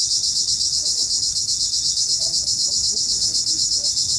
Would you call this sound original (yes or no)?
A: no